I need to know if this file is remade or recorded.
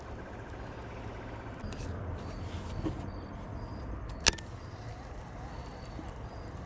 recorded